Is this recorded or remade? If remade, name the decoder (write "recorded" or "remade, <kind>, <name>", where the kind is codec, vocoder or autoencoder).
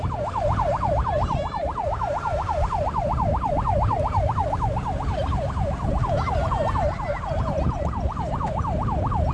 remade, vocoder, BigVGAN v2